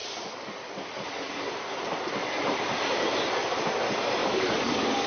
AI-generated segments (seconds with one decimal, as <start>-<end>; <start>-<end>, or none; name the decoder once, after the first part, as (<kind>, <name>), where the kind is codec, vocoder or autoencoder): 4.2-5.1 (codec, DAC)